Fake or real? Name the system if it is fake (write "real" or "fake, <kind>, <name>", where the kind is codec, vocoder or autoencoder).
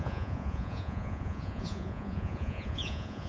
fake, vocoder, Vocos